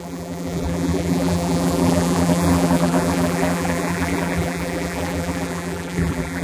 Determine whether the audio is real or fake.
fake